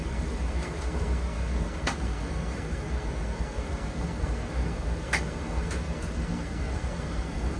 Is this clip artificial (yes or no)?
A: yes